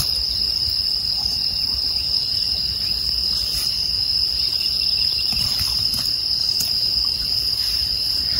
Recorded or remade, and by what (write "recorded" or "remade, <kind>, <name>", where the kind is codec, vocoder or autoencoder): remade, vocoder, BigVGAN v2